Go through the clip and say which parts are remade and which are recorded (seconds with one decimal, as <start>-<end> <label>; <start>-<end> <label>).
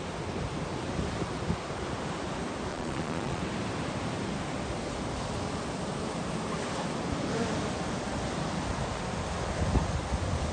0.0-2.7 recorded; 2.7-3.4 remade; 3.4-10.5 recorded